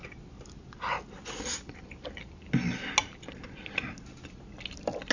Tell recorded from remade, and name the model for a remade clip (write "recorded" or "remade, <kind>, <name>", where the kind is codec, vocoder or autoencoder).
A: recorded